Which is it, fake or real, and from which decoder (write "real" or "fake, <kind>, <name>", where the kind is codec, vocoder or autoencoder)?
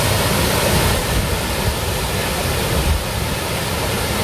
real